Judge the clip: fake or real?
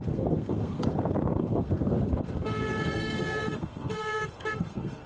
fake